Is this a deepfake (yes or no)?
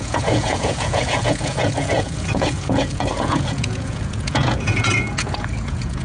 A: yes